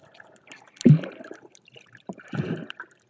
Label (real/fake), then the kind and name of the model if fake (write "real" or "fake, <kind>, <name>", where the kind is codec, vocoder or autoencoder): real